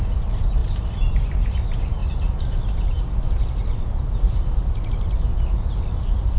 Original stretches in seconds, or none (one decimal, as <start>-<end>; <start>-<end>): 0.0-6.4